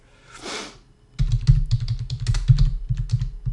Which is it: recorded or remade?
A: recorded